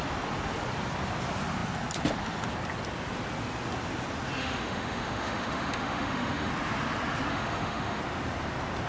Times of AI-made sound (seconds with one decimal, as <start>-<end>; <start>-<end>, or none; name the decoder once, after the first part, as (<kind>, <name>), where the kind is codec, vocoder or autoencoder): 4.4-6.5 (autoencoder, DAC-VAE); 7.3-8.0